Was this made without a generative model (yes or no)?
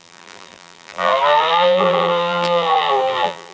no